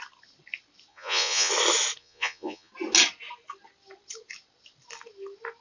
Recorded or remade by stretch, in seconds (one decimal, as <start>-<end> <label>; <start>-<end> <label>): 0.0-0.9 recorded; 0.9-1.5 remade; 1.5-2.0 recorded; 2.0-2.7 remade; 2.7-5.6 recorded